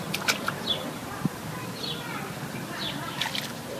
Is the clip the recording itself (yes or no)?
yes